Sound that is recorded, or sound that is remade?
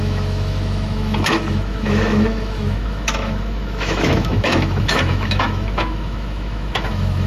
remade